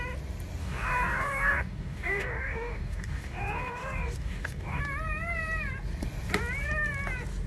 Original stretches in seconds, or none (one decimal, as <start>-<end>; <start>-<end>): 0.0-0.6; 4.8-7.5